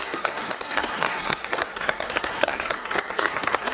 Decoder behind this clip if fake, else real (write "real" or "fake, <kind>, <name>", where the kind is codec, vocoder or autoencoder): fake, codec, SNAC